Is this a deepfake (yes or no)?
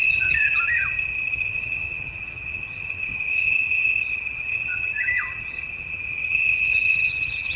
yes